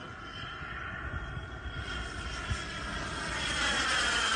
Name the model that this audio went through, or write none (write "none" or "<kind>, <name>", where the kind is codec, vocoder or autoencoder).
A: none